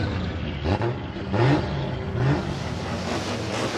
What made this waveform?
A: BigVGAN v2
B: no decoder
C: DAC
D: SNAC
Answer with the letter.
B